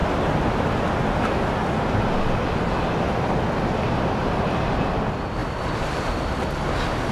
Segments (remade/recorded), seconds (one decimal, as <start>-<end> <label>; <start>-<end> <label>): 0.0-4.2 recorded; 4.2-4.9 remade; 4.9-5.4 recorded; 5.4-6.1 remade; 6.1-7.1 recorded

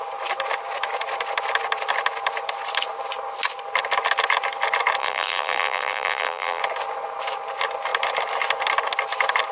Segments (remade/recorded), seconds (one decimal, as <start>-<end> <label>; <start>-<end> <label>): 0.0-5.0 recorded; 5.0-6.6 remade; 6.6-9.5 recorded

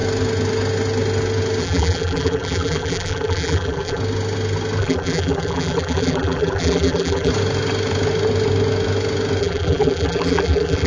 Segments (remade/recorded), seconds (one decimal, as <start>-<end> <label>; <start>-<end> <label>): 0.0-1.6 recorded; 1.6-4.0 remade; 4.0-4.8 recorded; 4.8-7.3 remade; 7.3-9.4 recorded; 9.4-10.9 remade

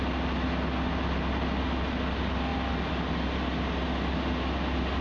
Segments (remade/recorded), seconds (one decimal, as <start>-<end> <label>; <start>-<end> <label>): 0.0-5.0 recorded

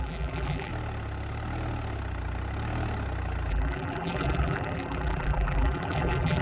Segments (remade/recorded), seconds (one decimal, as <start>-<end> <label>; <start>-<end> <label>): 0.0-0.7 remade; 0.7-3.5 recorded; 3.5-6.4 remade

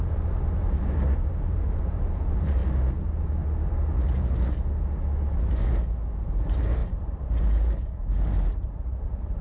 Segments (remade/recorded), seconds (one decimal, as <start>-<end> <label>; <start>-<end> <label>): 0.0-2.6 remade; 2.6-6.2 recorded; 6.2-9.4 remade

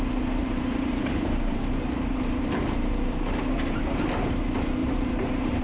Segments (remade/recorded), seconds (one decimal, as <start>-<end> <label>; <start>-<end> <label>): 0.0-0.4 recorded; 0.4-3.8 remade; 3.8-4.8 recorded; 4.8-5.6 remade